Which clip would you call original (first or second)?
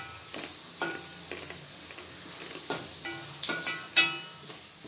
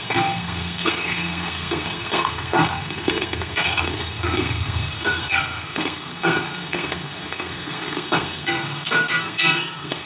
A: first